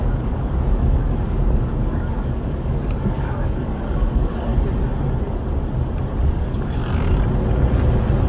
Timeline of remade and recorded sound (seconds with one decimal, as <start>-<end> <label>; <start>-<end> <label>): 0.0-4.5 remade; 4.5-6.3 recorded; 6.3-6.8 remade; 6.8-8.3 recorded